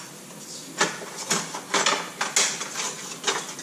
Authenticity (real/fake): real